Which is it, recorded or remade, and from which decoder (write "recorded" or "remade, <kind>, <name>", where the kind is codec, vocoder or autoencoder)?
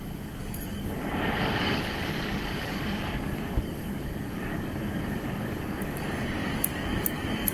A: remade, codec, DAC